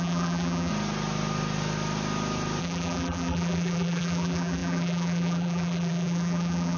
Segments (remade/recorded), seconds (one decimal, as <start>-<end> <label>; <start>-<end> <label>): 0.0-0.7 remade; 0.7-2.6 recorded; 2.6-6.8 remade